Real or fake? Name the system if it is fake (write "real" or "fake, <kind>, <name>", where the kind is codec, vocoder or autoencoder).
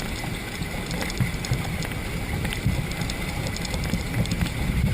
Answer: real